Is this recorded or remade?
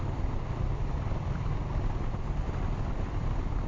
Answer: remade